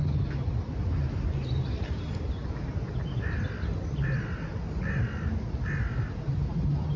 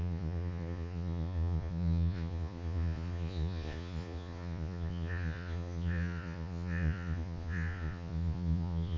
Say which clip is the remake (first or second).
second